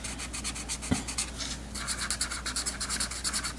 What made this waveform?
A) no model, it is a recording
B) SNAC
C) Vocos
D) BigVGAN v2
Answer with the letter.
A